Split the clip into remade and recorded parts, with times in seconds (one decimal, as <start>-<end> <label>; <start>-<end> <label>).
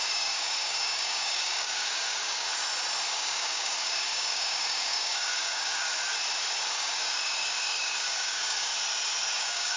0.0-2.5 remade; 2.5-3.1 recorded; 3.1-5.9 remade; 5.9-6.7 recorded; 6.7-8.7 remade; 8.7-9.3 recorded; 9.3-9.8 remade